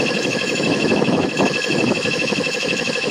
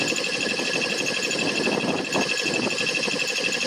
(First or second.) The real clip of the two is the second